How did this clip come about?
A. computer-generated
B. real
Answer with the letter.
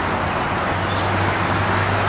B